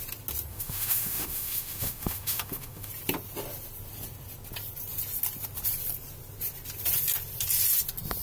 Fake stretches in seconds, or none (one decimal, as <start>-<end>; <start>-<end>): 0.5-2.9